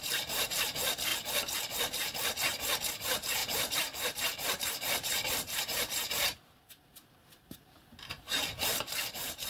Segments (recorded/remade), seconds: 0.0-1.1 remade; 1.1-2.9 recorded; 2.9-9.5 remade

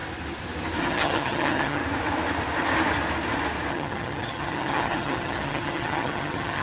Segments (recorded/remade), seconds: 0.0-0.8 recorded; 0.8-1.8 remade; 1.8-3.7 recorded; 3.7-6.6 remade

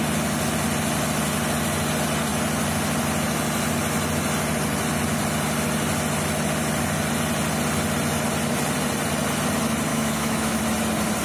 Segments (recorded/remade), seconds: 0.0-9.9 recorded; 9.9-10.6 remade; 10.6-11.2 recorded